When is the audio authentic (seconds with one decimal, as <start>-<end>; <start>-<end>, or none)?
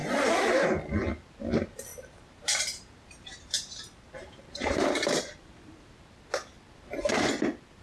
0.6-1.9; 6.0-7.8